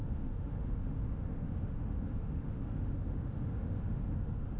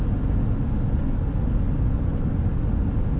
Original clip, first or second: second